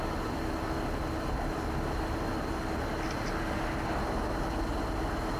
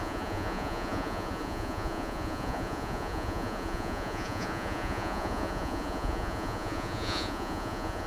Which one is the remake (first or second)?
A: second